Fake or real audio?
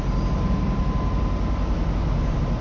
real